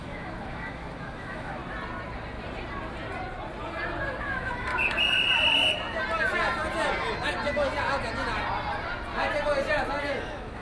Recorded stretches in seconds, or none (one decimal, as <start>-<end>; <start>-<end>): 1.6-4.2; 4.7-10.0